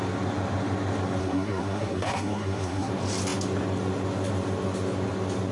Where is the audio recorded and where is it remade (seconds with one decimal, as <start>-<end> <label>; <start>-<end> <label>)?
0.0-1.2 recorded; 1.2-2.9 remade; 2.9-5.5 recorded